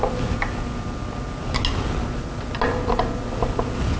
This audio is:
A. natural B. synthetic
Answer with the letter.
A